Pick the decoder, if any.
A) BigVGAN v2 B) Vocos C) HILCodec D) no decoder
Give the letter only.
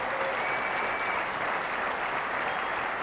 D